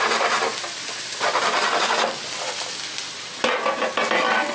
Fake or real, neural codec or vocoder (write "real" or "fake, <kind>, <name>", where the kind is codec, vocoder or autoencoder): real